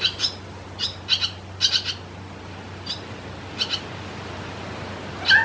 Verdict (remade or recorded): recorded